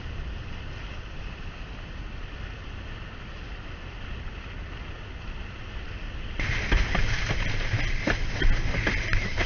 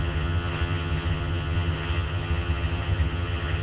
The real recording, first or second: first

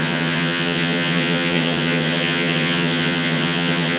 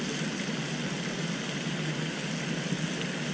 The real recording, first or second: second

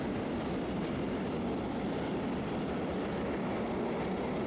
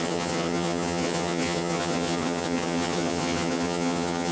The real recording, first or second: first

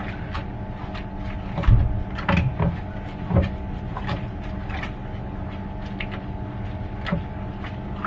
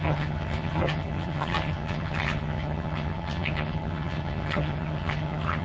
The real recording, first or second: first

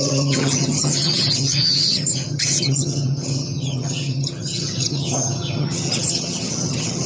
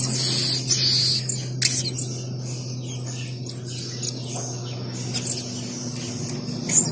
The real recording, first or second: second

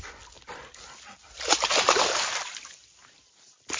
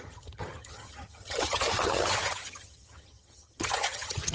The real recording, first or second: first